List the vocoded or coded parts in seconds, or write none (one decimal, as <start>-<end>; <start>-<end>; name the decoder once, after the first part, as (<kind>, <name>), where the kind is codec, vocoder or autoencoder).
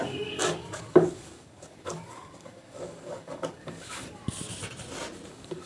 0.0-4.2 (codec, DAC); 5.3-5.7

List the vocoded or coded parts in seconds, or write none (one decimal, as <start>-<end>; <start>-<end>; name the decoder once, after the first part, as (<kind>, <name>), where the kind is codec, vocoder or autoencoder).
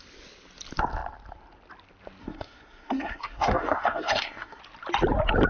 2.2-4.6 (codec, SNAC)